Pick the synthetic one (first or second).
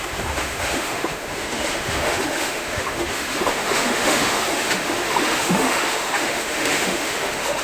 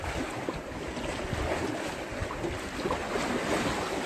first